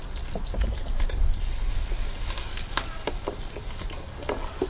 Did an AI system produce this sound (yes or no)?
no